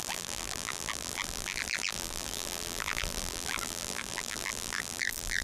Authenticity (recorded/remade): remade